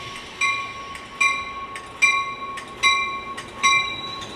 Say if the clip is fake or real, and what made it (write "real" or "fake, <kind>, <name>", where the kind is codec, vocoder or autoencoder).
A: real